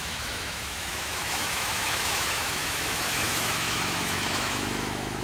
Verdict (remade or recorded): remade